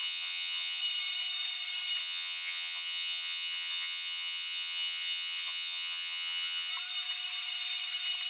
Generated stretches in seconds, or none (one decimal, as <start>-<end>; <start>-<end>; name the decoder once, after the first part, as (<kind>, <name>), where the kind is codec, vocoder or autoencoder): 0.0-0.8 (vocoder, WaveNeXt); 2.0-6.7